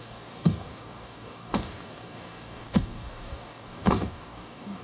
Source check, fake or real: fake